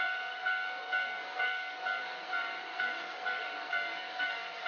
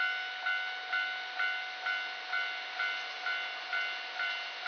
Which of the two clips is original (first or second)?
second